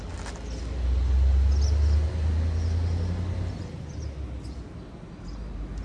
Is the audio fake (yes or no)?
no